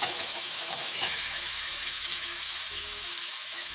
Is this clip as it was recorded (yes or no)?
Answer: no